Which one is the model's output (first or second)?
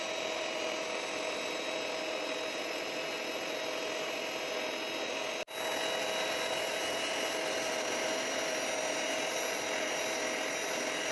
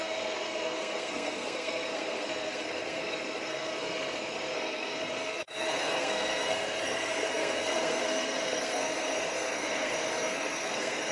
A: second